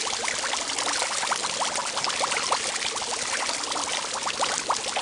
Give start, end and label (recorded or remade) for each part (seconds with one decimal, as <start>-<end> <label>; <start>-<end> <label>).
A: 0.0-1.8 recorded; 1.8-4.5 remade; 4.5-5.0 recorded